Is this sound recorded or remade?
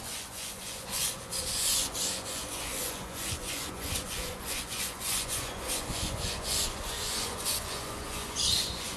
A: remade